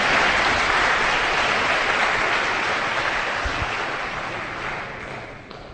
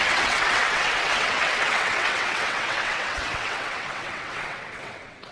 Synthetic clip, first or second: second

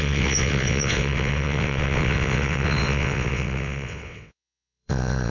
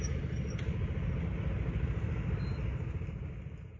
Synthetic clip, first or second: first